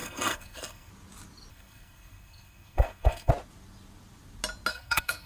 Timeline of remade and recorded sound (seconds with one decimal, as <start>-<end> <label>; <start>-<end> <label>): 0.0-0.9 remade; 0.9-1.5 recorded; 1.5-3.3 remade; 3.3-4.7 recorded; 4.7-5.3 remade